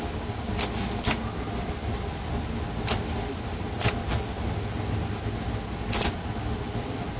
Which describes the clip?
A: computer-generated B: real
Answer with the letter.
B